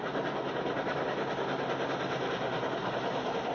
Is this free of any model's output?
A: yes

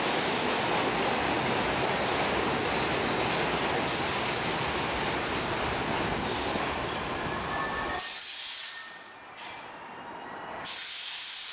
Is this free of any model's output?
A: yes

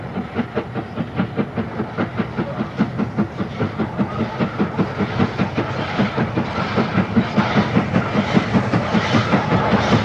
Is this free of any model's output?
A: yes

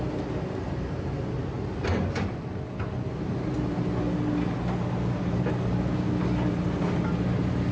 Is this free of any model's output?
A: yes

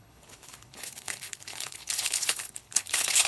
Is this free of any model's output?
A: no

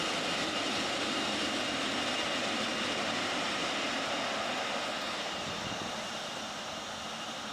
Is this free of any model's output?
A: yes